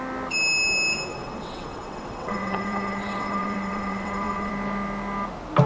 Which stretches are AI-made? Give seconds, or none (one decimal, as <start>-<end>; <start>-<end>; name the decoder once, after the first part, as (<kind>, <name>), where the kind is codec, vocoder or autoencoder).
1.1-4.5 (vocoder, WaveNeXt)

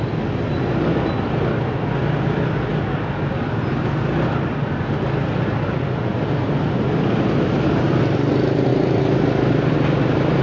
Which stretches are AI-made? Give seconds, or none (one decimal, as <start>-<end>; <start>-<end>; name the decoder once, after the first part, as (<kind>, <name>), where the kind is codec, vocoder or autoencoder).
none